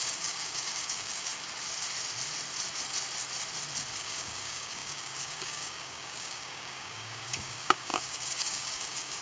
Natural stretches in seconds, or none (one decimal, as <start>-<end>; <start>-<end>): 1.3-3.9